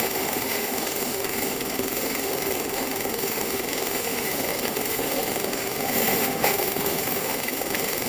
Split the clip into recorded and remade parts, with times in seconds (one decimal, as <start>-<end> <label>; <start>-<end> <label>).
0.0-8.1 remade